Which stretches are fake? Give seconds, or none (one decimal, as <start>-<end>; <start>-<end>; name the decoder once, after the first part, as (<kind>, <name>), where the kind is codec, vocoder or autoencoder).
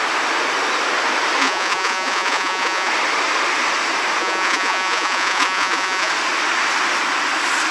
1.4-2.9 (vocoder, Vocos); 4.2-6.1